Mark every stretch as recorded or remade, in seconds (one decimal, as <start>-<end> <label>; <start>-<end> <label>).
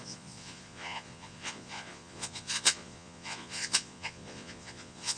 0.0-5.2 remade